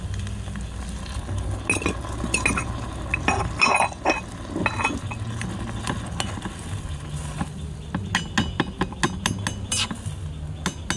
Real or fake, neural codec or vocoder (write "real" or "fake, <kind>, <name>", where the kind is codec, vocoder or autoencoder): real